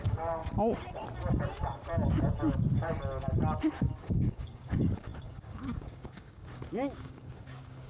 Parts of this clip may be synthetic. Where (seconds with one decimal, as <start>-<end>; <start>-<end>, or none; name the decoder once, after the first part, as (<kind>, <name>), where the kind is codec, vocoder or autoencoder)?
0.0-0.4 (codec, DAC); 3.8-7.9

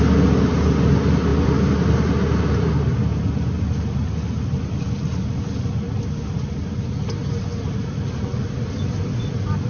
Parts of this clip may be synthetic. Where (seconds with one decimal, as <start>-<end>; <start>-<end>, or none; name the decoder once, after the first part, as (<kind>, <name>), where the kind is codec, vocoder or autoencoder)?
none